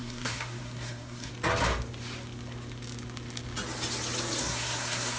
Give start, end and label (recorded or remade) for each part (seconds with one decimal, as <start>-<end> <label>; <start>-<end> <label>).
0.0-1.3 remade; 1.3-4.4 recorded; 4.4-5.2 remade